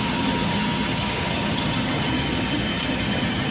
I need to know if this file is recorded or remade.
remade